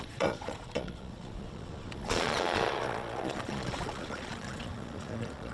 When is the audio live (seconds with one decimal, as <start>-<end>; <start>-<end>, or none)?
none